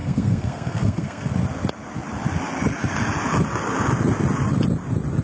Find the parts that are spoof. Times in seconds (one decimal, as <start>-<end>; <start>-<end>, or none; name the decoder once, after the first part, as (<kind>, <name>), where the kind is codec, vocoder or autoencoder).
0.0-1.3 (codec, SNAC)